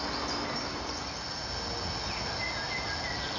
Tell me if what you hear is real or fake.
real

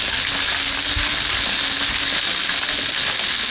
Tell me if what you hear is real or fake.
real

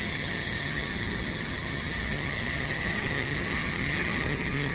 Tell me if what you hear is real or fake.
fake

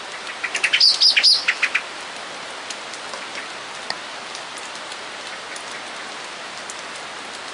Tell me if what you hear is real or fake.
real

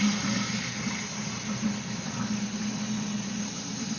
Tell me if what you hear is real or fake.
real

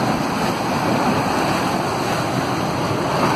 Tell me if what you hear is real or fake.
real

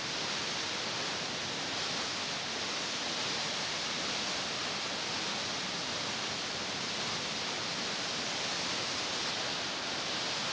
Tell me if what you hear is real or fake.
real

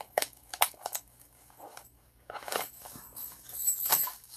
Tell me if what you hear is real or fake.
fake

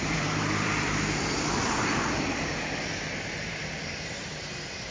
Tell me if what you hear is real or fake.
fake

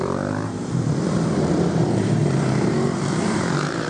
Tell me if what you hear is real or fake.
fake